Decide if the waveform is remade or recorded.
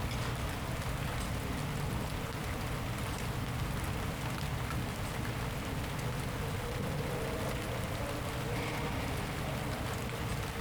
recorded